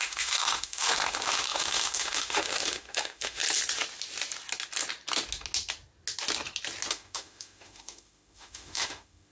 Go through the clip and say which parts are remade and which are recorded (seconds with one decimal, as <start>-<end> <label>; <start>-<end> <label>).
0.0-3.4 remade; 3.4-6.9 recorded; 6.9-9.3 remade